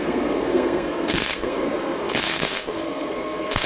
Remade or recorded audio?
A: remade